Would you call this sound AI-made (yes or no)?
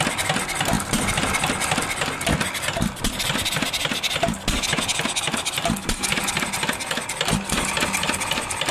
no